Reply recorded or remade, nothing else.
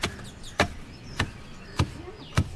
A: recorded